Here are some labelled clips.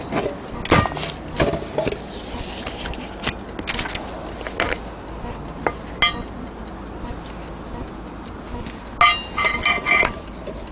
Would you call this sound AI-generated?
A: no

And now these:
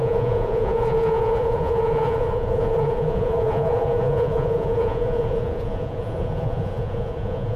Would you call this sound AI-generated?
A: yes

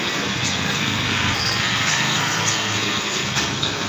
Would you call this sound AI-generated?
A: yes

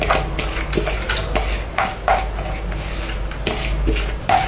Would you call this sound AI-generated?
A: no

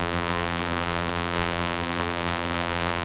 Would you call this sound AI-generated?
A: yes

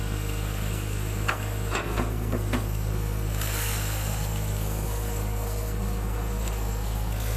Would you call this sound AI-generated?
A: yes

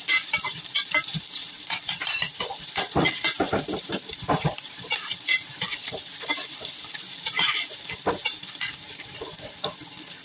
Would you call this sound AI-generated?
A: yes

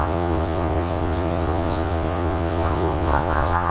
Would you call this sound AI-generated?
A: yes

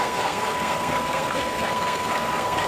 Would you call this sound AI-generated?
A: yes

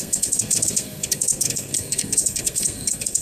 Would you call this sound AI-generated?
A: yes